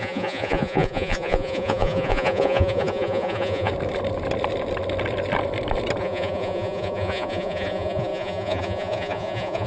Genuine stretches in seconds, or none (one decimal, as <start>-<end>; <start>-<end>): 3.7-6.0